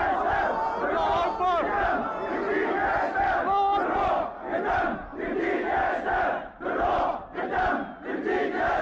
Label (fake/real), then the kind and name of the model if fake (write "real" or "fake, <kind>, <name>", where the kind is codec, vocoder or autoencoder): real